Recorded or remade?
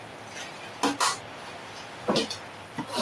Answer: recorded